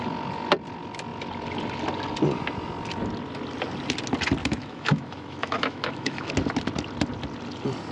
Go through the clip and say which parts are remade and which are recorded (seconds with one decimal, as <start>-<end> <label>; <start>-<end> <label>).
0.0-4.4 recorded; 4.4-6.3 remade; 6.3-7.9 recorded